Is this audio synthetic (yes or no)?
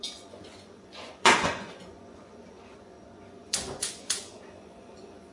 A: yes